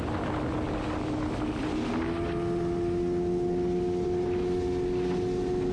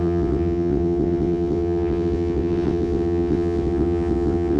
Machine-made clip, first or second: second